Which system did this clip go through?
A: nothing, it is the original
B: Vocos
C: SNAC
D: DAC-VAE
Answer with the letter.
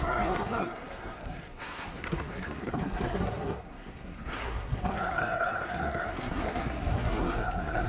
C